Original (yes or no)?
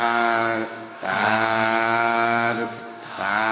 no